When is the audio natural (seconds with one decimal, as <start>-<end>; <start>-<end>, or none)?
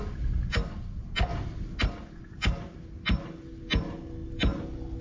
0.0-5.0